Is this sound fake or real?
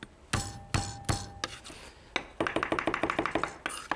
real